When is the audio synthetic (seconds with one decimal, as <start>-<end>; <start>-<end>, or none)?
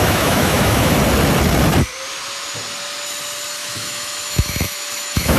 0.0-0.9; 3.6-5.4